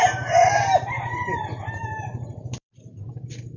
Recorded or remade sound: remade